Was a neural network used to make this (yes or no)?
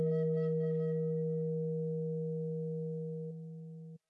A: no